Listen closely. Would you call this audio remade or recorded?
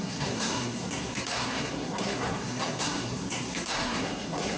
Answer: remade